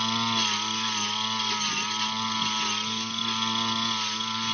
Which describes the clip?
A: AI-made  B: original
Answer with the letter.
B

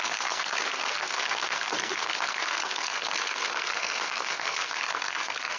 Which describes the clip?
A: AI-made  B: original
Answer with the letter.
A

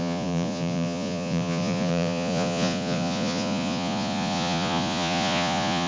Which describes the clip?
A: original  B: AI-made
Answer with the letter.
B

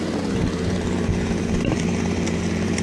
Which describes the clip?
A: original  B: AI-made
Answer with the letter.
B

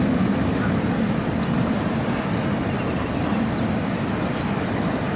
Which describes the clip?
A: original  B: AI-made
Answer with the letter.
A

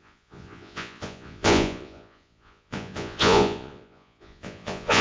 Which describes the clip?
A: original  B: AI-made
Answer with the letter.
B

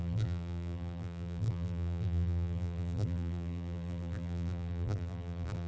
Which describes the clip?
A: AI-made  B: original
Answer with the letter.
A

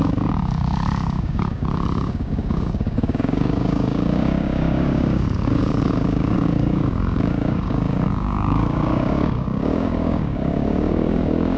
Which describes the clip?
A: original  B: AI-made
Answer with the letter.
B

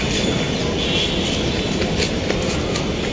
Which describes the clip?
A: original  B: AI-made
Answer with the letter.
A